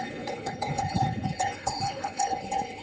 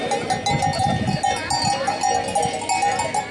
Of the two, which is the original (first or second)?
second